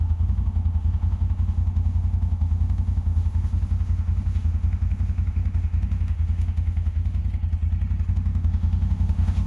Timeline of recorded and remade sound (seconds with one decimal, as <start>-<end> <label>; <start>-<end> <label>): 0.0-7.2 remade; 7.2-8.1 recorded; 8.1-9.5 remade